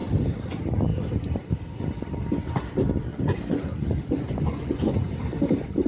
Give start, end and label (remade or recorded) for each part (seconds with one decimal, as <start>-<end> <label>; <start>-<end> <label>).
0.0-3.1 recorded; 3.1-5.2 remade; 5.2-5.9 recorded